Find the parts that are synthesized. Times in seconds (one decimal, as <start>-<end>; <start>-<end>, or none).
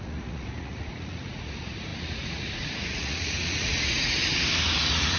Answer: 0.0-4.2; 4.8-5.2